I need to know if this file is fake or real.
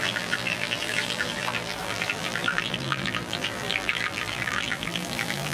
fake